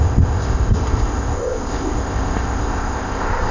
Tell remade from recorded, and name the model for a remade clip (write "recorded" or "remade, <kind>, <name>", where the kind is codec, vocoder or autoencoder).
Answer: remade, codec, ZipCodec